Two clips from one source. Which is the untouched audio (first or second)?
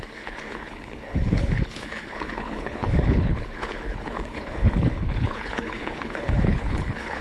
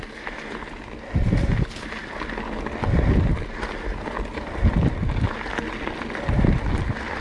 second